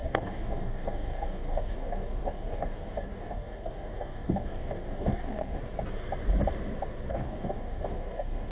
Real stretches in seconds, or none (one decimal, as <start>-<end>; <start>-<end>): 5.6-7.1